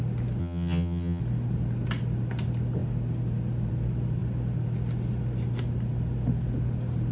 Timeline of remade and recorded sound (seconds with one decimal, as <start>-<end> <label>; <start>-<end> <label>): 0.0-0.4 recorded; 0.4-1.2 remade; 1.2-7.1 recorded